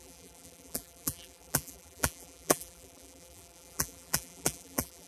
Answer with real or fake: fake